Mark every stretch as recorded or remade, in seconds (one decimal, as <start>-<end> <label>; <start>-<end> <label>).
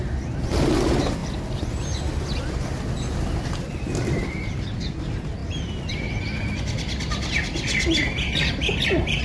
0.0-9.2 recorded